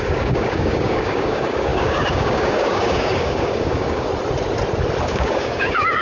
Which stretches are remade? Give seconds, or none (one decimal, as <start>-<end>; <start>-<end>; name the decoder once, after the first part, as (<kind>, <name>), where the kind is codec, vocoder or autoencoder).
0.0-4.1 (codec, DAC); 5.0-6.0